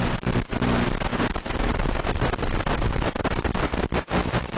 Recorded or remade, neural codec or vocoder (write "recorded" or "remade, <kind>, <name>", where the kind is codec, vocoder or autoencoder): recorded